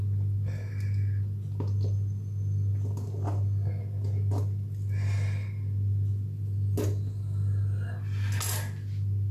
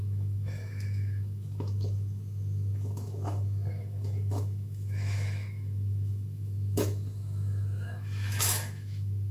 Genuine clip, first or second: first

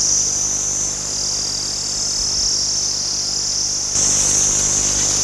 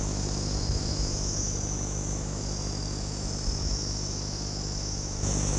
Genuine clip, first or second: first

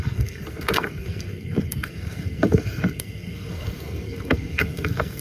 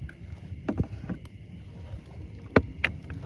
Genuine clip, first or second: second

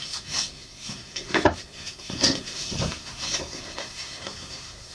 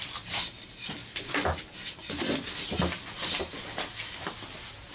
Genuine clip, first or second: second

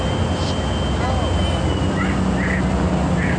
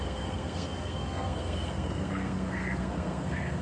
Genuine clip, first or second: first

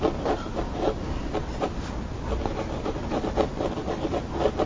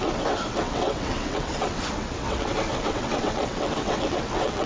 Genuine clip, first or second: first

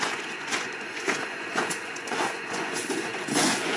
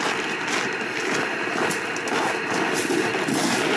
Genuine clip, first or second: second